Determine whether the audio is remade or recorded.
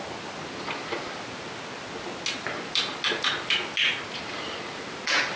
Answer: recorded